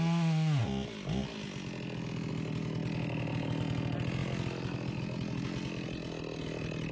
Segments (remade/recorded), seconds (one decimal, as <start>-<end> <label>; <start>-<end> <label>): 0.0-6.9 recorded